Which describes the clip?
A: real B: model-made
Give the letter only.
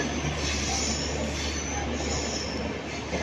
A